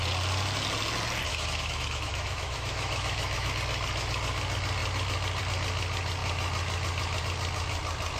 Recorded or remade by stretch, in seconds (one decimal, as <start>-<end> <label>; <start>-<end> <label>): 0.0-1.3 recorded; 1.3-3.5 remade; 3.5-8.2 recorded